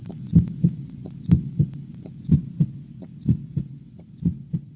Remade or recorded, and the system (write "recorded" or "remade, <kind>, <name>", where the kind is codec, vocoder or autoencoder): remade, vocoder, WaveNeXt